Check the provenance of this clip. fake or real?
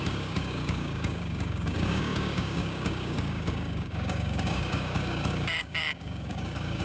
fake